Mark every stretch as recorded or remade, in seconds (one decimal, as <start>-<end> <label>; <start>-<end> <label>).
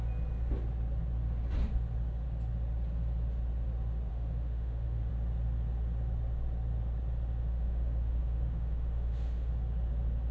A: 0.0-4.1 recorded; 4.1-5.1 remade; 5.1-7.4 recorded; 7.4-9.5 remade; 9.5-10.3 recorded